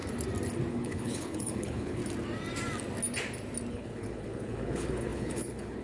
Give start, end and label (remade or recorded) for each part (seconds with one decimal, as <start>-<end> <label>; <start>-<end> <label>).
0.0-0.7 recorded; 0.7-2.0 remade; 2.0-3.7 recorded; 3.7-5.8 remade